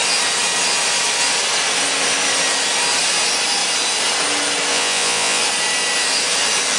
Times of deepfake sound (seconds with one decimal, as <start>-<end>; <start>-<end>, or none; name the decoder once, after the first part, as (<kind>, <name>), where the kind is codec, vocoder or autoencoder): 4.7-5.4 (vocoder, Vocos)